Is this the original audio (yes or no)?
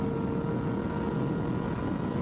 yes